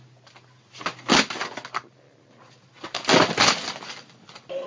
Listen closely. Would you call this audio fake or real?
real